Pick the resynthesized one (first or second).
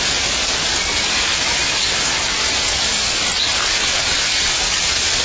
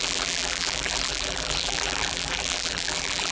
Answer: second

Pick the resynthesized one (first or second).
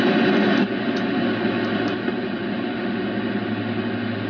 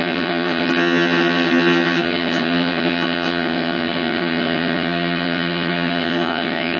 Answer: second